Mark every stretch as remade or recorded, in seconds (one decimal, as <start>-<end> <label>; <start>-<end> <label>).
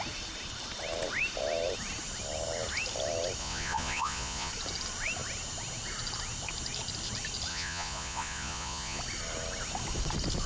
0.0-3.4 recorded; 3.4-4.5 remade; 4.5-7.5 recorded; 7.5-9.0 remade; 9.0-10.5 recorded